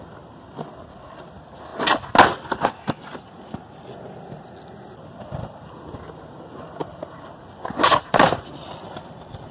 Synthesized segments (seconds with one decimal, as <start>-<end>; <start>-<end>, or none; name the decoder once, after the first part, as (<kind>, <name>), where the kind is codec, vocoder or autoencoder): 6.8-9.5 (vocoder, BigVGAN v2)